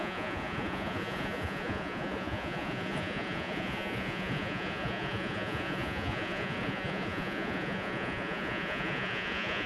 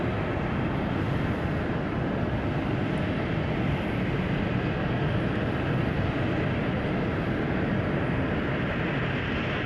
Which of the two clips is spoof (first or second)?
first